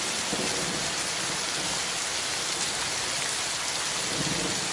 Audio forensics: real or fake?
real